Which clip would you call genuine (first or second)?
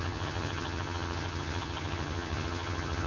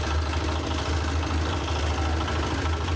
second